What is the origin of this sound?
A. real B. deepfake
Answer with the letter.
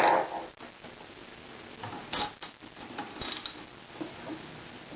A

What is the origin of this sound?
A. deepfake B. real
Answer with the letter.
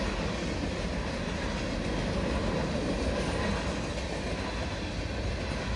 B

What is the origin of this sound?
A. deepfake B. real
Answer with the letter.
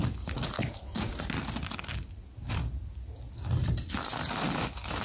B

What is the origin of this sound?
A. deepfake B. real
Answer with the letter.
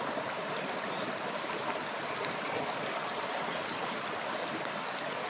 B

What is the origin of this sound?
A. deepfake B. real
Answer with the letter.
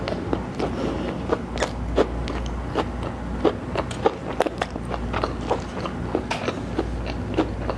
B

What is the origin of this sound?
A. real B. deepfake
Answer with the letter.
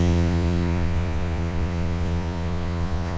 B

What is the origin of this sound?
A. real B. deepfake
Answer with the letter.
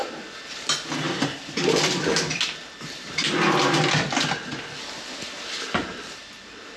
A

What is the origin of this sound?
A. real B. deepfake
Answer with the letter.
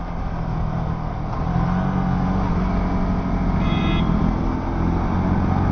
A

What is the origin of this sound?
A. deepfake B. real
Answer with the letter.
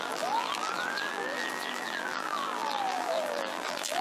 A